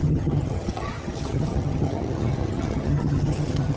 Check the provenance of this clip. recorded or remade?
remade